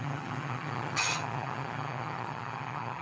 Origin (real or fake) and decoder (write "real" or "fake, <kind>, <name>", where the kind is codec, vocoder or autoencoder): fake, vocoder, HiFi-GAN